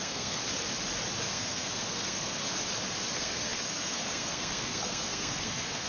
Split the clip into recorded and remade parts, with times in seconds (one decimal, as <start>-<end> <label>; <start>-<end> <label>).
0.0-0.4 remade; 0.4-1.3 recorded; 1.3-2.4 remade; 2.4-3.1 recorded; 3.1-5.9 remade